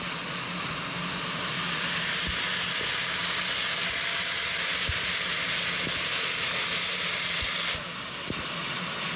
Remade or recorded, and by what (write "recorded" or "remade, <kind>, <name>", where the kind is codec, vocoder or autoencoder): recorded